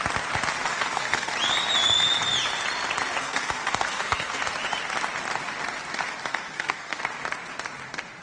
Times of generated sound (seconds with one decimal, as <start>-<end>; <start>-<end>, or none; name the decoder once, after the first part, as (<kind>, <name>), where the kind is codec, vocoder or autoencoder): 0.7-1.3 (codec, SNAC); 3.2-4.4; 6.3-7.0

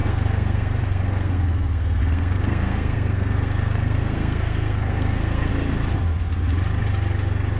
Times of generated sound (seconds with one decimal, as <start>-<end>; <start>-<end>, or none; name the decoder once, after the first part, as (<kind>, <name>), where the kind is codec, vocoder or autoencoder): 0.0-5.5 (codec, SNAC)

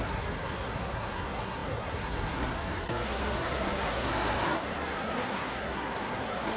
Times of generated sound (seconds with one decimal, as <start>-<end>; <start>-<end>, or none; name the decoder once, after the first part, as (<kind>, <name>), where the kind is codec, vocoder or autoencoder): 0.0-6.6 (codec, SNAC)

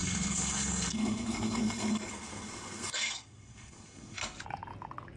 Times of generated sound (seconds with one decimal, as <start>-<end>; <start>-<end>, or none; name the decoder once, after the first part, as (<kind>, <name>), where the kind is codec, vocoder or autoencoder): 0.0-4.2 (codec, SNAC)

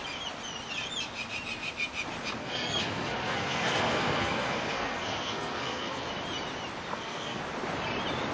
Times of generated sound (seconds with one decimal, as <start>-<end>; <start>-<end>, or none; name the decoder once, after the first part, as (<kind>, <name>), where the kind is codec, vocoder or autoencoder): 2.4-6.1 (codec, SNAC); 6.9-7.4

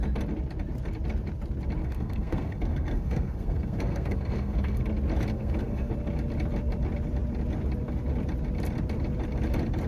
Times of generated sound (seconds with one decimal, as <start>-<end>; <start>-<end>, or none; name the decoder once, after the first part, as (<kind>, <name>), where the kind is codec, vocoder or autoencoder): 1.8-4.8 (codec, SNAC); 5.3-5.9

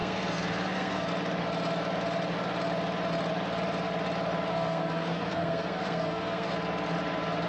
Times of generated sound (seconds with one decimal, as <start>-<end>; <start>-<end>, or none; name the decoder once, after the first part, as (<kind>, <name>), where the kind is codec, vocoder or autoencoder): 0.0-1.1 (codec, SNAC); 4.5-6.5